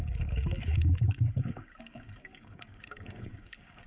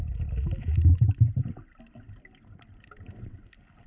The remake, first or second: first